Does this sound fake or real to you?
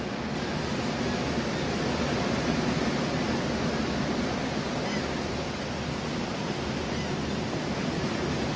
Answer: real